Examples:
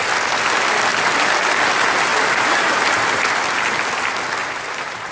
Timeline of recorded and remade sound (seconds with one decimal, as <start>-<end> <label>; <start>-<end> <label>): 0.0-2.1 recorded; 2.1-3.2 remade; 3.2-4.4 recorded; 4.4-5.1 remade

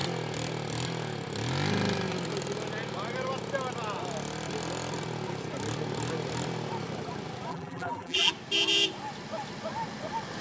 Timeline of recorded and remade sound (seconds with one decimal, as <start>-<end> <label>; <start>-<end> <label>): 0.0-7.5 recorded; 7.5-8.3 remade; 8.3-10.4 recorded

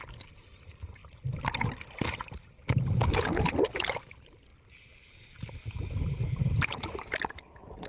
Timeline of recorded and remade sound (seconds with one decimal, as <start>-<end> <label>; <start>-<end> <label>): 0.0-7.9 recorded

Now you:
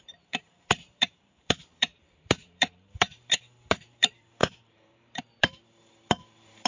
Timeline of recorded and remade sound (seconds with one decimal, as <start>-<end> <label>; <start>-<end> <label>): 0.0-6.7 remade

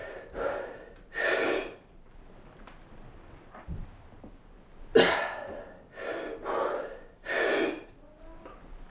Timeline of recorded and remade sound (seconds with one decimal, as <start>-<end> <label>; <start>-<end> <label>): 0.0-8.9 recorded

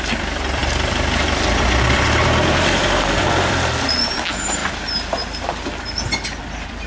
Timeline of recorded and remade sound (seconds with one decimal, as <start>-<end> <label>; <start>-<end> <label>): 0.0-4.6 remade; 4.6-6.4 recorded; 6.4-6.9 remade

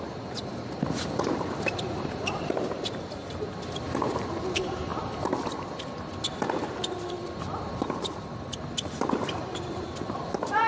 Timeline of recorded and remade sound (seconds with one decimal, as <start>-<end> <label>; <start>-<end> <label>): 0.0-0.4 remade; 0.4-1.2 recorded; 1.2-4.9 remade; 4.9-6.3 recorded; 6.3-7.2 remade; 7.2-7.8 recorded; 7.8-10.7 remade